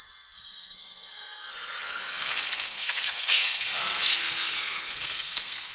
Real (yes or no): no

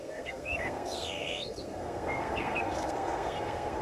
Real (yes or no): no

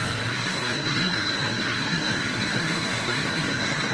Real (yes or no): no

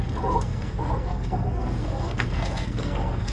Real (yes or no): no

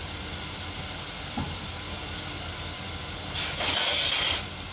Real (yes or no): yes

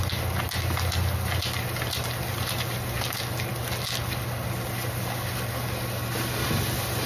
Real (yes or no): yes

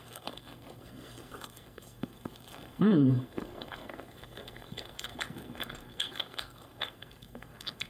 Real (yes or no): no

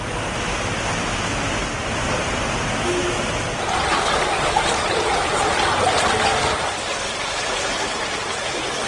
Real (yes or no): yes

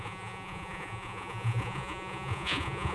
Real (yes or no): no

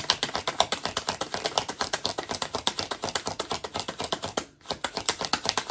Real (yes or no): yes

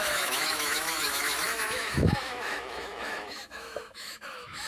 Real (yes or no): no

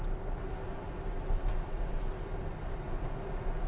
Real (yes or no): yes